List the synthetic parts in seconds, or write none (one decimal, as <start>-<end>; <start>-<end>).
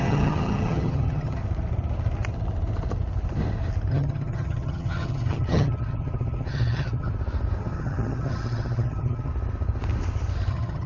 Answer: 0.0-1.4; 3.9-7.1; 7.6-9.3; 10.5-10.9